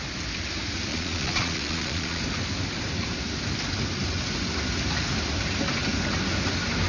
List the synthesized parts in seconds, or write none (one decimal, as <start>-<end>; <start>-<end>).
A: 0.9-2.2